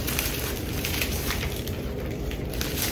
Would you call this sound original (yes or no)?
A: no